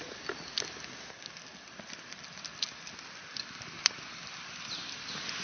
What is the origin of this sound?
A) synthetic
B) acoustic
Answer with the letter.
B